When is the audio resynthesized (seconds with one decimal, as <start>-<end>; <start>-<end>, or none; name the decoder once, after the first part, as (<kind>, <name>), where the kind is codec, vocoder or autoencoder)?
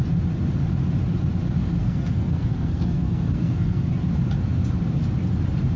1.8-3.9 (codec, SNAC)